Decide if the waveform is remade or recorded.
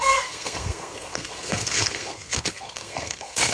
remade